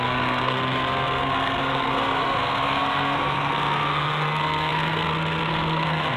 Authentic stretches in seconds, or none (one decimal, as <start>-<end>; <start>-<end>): none